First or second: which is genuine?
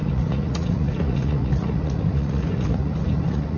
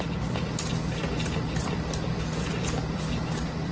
second